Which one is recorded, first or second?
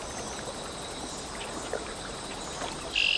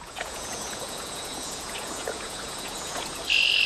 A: first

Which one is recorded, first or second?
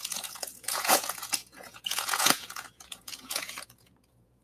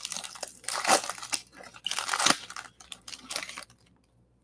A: second